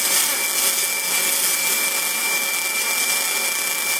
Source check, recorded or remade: recorded